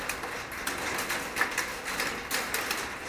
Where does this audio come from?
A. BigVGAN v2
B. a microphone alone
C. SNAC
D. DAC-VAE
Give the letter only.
B